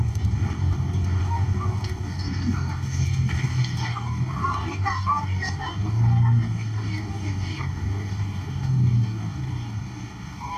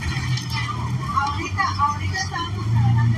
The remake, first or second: first